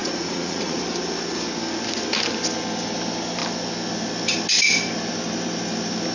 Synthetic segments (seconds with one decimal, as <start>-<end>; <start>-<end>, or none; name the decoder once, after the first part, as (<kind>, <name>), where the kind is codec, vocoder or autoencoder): 0.0-0.8 (vocoder, Vocos)